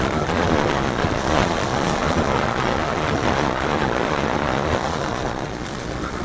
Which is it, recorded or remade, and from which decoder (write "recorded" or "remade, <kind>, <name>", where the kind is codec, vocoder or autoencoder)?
remade, vocoder, Vocos